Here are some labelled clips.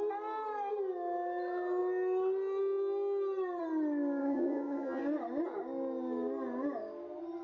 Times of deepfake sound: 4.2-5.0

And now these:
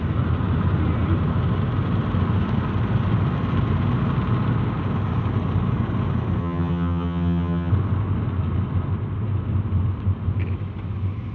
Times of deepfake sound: 6.4-7.7

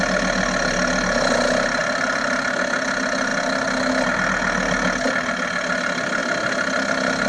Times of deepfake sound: none

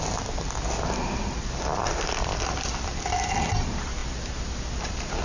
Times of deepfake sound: 0.0-4.0; 4.8-5.2

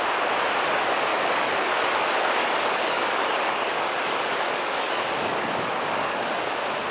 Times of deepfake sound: 1.1-1.8; 2.4-6.4